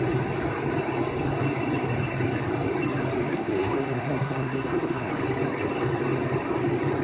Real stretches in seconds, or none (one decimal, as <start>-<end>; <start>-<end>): 0.0-3.3; 5.1-7.0